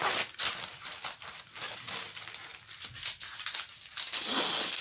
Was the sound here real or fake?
real